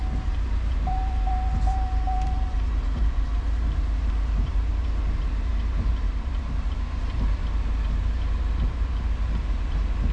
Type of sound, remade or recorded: remade